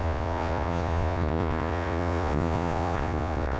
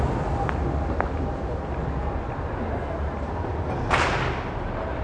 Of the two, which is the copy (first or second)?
first